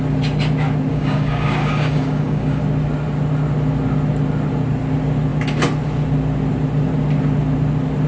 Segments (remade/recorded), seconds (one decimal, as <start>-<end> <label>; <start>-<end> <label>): 0.0-0.9 recorded; 0.9-2.6 remade; 2.6-8.1 recorded